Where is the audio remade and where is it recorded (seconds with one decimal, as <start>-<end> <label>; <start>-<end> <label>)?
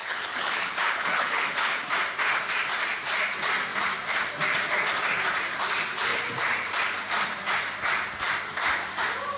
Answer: 0.0-1.8 remade; 1.8-9.4 recorded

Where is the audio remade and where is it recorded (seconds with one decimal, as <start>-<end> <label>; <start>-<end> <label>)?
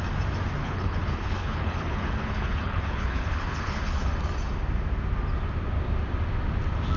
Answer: 0.0-0.6 recorded; 0.6-4.1 remade; 4.1-7.0 recorded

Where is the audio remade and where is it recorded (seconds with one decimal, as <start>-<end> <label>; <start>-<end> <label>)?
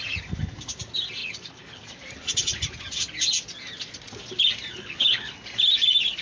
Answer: 0.0-1.2 recorded; 1.2-1.8 remade; 1.8-4.7 recorded; 4.7-5.3 remade; 5.3-6.2 recorded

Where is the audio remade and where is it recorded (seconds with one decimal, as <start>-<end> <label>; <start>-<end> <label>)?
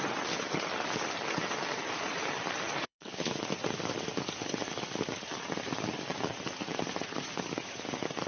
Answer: 0.0-2.8 recorded; 2.8-3.3 remade; 3.3-8.3 recorded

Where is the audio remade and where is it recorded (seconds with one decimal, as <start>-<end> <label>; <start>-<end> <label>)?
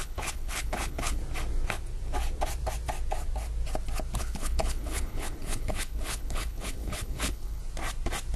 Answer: 0.0-1.2 remade; 1.2-4.2 recorded; 4.2-7.6 remade; 7.6-8.4 recorded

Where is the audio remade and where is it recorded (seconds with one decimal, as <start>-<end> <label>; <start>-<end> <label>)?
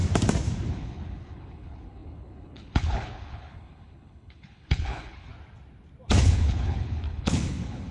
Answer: 0.0-0.7 recorded; 0.7-5.3 remade; 5.3-6.2 recorded; 6.2-7.9 remade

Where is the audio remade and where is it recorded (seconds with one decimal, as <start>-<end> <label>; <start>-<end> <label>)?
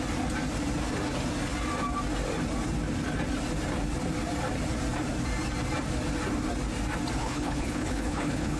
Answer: 0.0-7.2 recorded; 7.2-8.6 remade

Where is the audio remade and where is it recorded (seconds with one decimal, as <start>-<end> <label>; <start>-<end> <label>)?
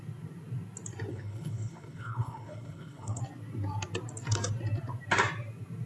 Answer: 0.0-1.1 recorded; 1.1-3.2 remade; 3.2-5.9 recorded